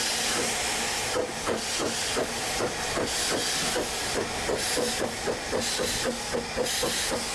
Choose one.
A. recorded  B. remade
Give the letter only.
A